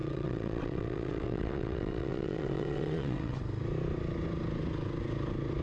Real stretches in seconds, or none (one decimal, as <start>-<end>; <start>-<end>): 3.4-5.6